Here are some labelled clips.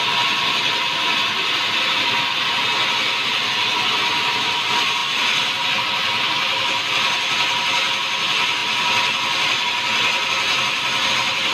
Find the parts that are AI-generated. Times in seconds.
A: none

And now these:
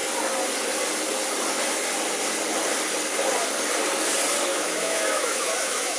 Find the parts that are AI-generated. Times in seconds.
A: 4.5-6.0 (autoencoder, DAC-VAE)

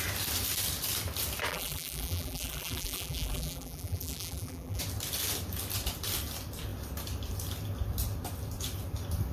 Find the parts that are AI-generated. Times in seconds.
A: 1.5-4.8 (vocoder, BigVGAN v2)

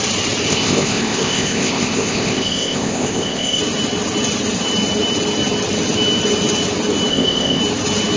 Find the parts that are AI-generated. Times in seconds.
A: 0.5-3.6 (codec, ZipCodec); 7.1-7.6

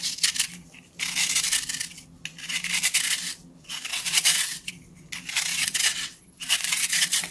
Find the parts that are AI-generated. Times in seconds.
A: 3.9-4.7 (vocoder, WaveNeXt); 5.5-7.3

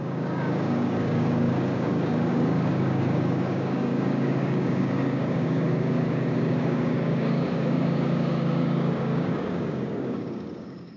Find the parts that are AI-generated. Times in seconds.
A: 0.0-11.0 (codec, DAC)

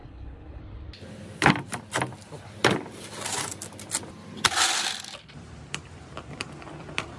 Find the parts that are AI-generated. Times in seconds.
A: 0.0-0.6 (codec, HILCodec)

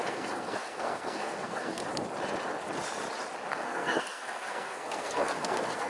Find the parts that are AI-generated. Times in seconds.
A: 0.0-1.8 (codec, SNAC); 3.5-5.9